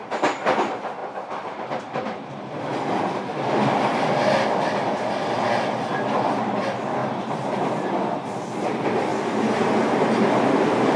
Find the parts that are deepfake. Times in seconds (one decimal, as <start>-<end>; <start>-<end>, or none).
0.0-9.1; 10.6-11.0